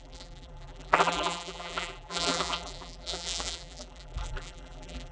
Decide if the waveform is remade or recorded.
remade